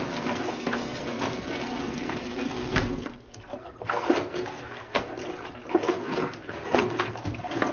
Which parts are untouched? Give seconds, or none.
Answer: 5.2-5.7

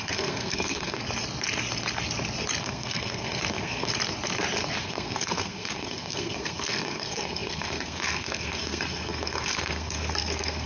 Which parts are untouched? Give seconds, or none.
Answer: 1.0-2.6; 3.9-4.8

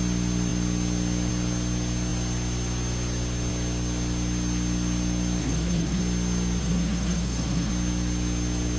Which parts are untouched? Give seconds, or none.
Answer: 0.0-5.4; 6.0-6.6; 7.7-8.8

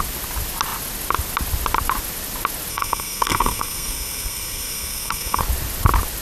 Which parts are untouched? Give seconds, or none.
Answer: 0.0-2.7; 5.4-6.2